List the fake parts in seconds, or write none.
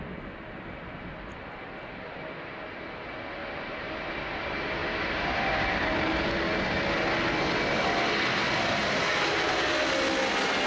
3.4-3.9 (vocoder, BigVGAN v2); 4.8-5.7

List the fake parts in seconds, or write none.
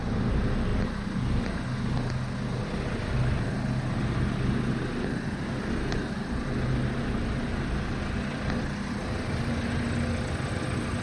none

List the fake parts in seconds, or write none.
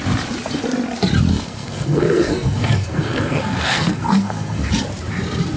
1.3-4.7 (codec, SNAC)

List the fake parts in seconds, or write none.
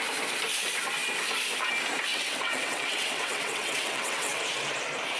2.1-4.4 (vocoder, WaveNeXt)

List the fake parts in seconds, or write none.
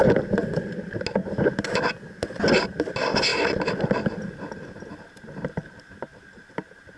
none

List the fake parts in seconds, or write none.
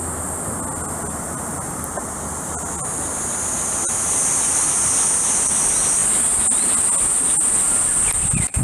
none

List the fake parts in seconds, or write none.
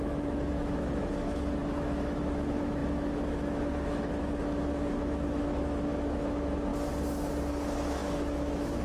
0.0-6.7 (autoencoder, DAC-VAE); 7.3-8.8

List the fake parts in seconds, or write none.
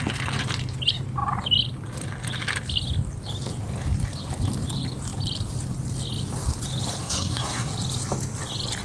7.0-7.7 (codec, SNAC)